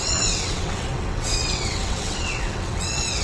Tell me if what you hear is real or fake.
fake